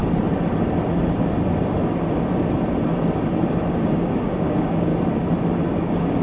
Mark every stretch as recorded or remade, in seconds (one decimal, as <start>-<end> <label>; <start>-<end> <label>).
0.0-3.7 recorded; 3.7-4.9 remade; 4.9-5.7 recorded; 5.7-6.2 remade